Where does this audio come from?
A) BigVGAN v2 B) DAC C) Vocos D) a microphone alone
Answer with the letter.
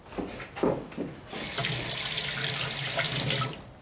D